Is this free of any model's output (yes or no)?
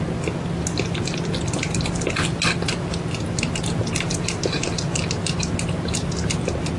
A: yes